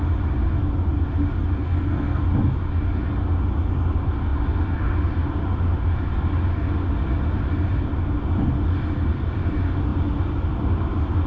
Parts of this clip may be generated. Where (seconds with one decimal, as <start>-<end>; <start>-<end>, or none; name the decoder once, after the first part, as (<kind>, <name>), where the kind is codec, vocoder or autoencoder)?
1.6-2.2 (codec, SNAC)